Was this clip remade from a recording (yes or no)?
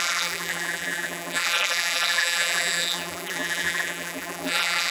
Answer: yes